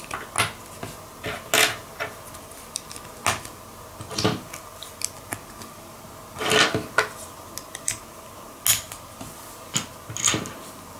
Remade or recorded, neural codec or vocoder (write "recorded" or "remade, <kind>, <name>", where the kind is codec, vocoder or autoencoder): recorded